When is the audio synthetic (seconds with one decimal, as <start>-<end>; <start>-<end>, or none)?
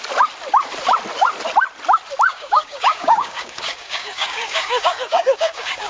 2.3-5.9